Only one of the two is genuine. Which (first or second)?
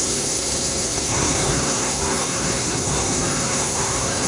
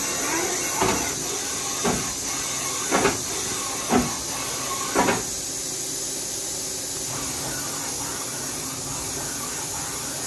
second